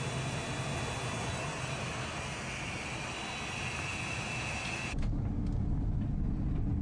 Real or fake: real